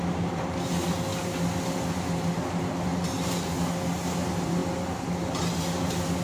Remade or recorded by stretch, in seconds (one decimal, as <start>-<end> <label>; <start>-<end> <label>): 0.0-6.2 recorded